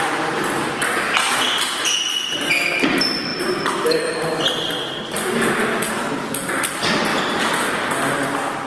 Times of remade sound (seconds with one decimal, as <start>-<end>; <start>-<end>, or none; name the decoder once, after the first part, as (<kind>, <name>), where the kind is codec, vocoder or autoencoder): none